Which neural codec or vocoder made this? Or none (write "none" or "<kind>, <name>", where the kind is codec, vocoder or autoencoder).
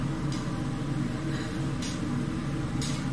none